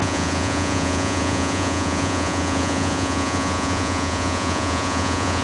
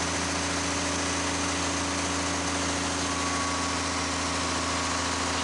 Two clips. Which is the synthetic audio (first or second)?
first